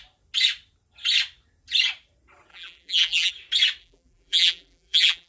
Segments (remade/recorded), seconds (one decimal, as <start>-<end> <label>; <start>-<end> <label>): 0.0-2.5 recorded; 2.5-3.3 remade; 3.3-3.8 recorded; 3.8-5.3 remade